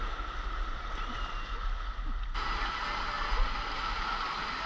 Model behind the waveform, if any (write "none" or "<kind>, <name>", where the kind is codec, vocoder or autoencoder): none